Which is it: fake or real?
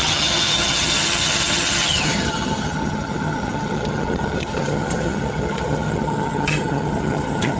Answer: fake